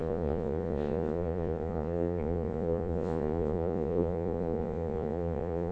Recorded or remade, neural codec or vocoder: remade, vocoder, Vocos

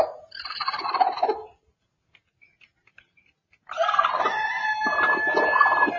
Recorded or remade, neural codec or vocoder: recorded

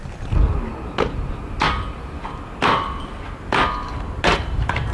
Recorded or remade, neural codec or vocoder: recorded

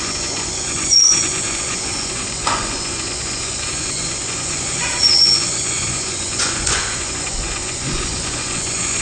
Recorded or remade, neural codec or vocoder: remade, vocoder, Vocos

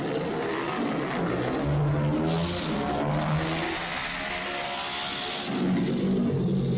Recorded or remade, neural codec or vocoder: recorded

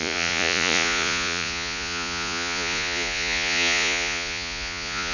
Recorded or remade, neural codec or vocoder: remade, vocoder, Vocos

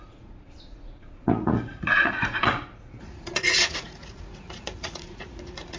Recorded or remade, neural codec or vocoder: remade, vocoder, Vocos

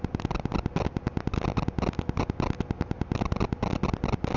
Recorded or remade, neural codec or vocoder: recorded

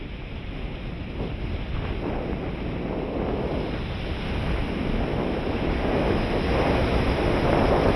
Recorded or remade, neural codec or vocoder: recorded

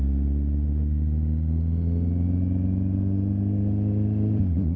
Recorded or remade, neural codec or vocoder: recorded